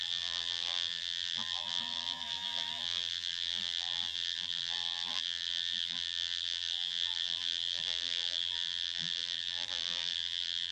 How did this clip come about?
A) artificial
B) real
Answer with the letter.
A